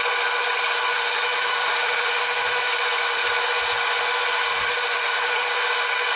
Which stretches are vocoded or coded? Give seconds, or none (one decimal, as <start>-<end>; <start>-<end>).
0.9-2.7; 4.5-5.5